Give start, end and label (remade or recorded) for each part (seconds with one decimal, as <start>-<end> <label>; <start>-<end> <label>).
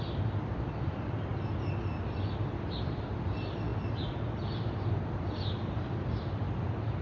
0.0-1.3 remade; 1.3-2.1 recorded; 2.1-3.7 remade; 3.7-5.1 recorded; 5.1-7.0 remade